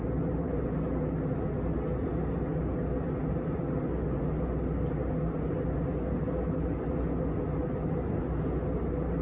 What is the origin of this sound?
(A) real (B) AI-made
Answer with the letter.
A